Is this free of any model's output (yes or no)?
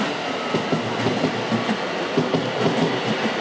yes